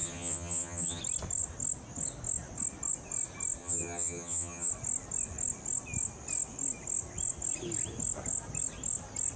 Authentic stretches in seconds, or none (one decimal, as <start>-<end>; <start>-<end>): 1.0-3.6; 4.7-9.4